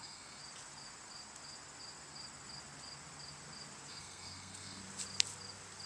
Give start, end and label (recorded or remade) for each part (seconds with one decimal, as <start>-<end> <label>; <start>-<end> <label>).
0.0-0.4 remade; 0.4-3.9 recorded; 3.9-4.8 remade; 4.8-5.9 recorded